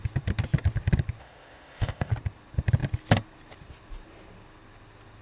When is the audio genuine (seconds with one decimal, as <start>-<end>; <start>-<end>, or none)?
0.0-1.2; 2.1-5.2

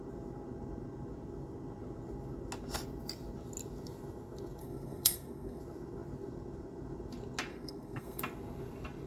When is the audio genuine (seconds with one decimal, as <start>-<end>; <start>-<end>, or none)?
0.0-4.6; 5.6-7.5; 8.2-9.1

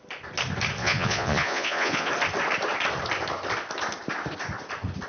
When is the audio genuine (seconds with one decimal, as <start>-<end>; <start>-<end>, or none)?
0.0-0.8; 2.1-5.1

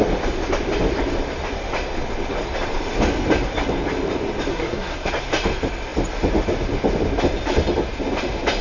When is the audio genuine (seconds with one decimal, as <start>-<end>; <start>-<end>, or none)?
0.0-4.5; 5.1-8.6

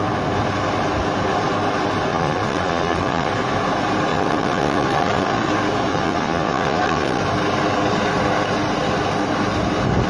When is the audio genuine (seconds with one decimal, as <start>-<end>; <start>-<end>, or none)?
0.0-2.1; 3.3-4.1; 5.5-5.9; 7.2-10.1